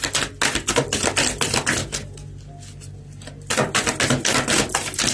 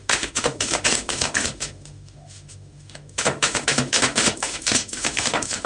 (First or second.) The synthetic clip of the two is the second